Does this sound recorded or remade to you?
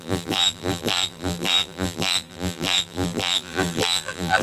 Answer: remade